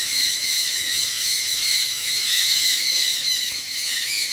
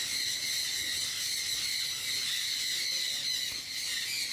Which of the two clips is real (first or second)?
second